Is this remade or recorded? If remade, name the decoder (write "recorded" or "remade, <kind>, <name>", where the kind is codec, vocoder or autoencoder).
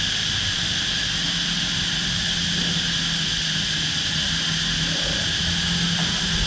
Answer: recorded